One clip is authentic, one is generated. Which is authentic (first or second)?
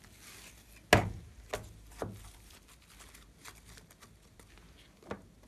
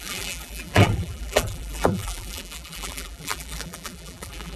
first